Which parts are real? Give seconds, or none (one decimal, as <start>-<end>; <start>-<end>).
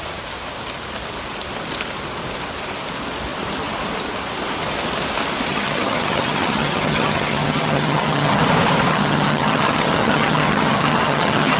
0.0-5.5; 8.4-8.9